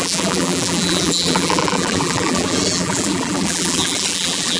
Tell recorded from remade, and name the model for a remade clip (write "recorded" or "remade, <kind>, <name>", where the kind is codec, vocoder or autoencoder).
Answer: remade, vocoder, BigVGAN v2